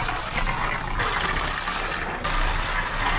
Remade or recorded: recorded